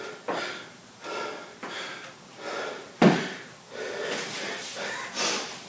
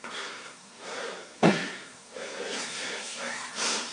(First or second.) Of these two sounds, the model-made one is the second